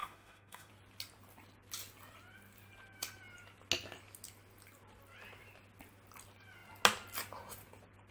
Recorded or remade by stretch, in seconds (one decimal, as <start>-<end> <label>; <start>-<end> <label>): 0.0-0.7 remade; 0.7-8.1 recorded

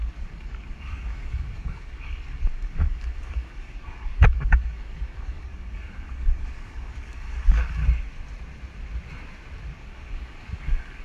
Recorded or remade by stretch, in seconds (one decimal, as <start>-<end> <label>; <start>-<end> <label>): 0.0-7.8 remade; 7.8-9.7 recorded; 9.7-11.0 remade

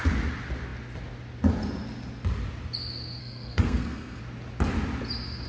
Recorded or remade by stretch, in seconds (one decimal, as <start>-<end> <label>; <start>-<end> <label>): 0.0-3.2 recorded; 3.2-4.2 remade; 4.2-5.5 recorded

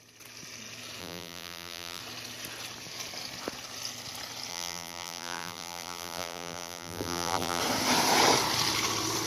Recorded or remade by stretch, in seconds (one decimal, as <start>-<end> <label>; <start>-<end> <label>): 0.0-1.0 recorded; 1.0-2.0 remade; 2.0-4.5 recorded; 4.5-7.6 remade; 7.6-9.3 recorded